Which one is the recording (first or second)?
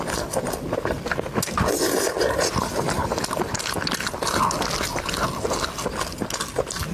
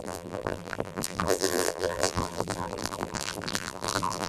first